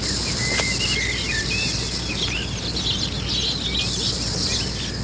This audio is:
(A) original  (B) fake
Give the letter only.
A